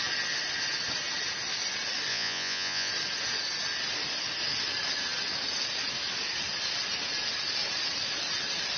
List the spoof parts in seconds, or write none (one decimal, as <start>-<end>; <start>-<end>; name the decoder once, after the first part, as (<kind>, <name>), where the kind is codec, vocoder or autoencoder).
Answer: 2.1-2.9 (vocoder, Vocos)

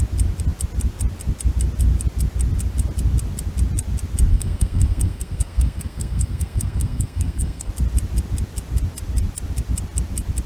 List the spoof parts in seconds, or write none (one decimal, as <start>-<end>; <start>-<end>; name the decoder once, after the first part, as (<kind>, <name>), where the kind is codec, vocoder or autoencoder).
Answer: 4.3-7.7 (codec, SNAC)

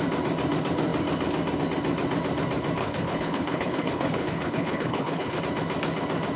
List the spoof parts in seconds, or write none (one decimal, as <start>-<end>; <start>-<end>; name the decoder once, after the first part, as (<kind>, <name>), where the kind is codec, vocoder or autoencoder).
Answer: 2.8-5.4 (codec, HILCodec)